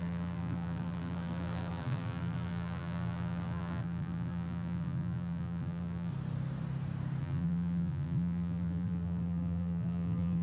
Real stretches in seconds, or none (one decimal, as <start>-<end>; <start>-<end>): 6.1-7.2